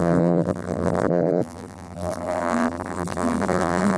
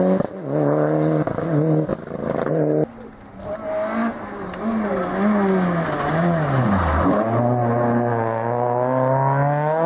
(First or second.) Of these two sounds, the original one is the second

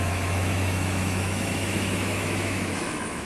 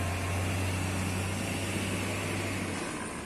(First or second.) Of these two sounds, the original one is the second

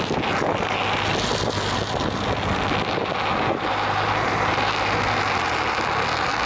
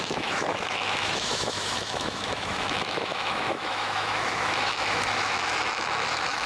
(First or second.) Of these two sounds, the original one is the first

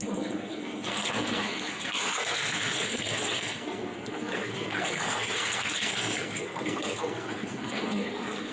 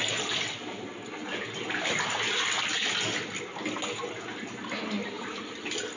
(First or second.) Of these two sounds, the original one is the second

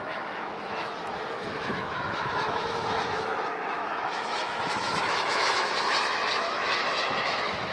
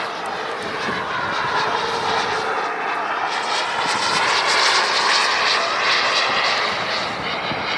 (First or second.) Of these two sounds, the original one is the second